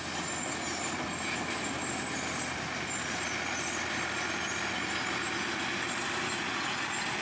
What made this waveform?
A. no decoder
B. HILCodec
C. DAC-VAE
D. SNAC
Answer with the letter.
A